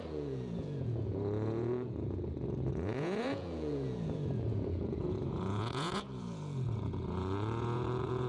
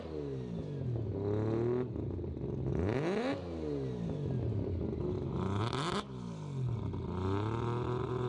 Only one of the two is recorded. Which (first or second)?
second